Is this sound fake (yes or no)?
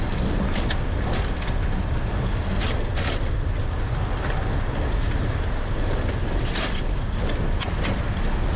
no